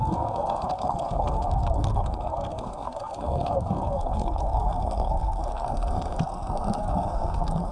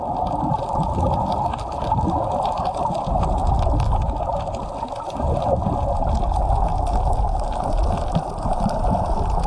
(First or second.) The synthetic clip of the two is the first